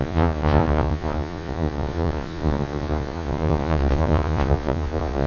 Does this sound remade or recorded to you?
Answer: remade